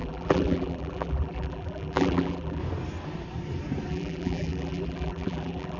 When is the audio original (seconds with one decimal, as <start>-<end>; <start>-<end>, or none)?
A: 2.6-3.9